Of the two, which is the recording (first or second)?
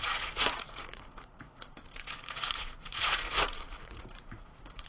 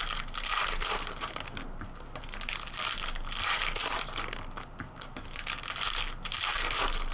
second